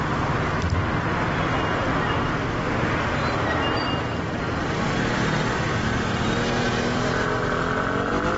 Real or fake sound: real